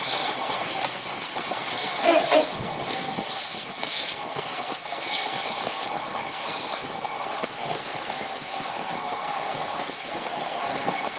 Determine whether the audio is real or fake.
fake